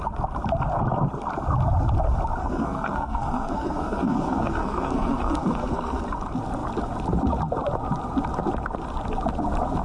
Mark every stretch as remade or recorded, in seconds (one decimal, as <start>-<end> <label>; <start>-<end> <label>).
0.0-2.4 recorded; 2.4-6.0 remade; 6.0-9.8 recorded